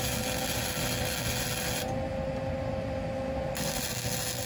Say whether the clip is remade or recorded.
recorded